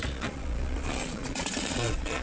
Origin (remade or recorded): remade